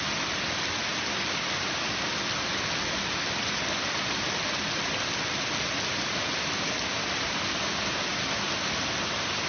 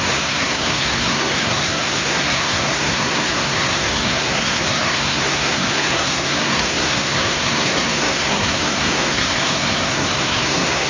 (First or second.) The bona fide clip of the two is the first